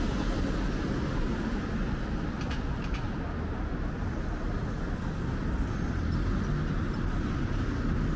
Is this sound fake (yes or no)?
no